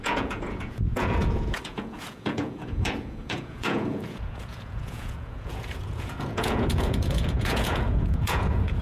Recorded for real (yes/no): no